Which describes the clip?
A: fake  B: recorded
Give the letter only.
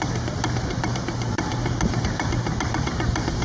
A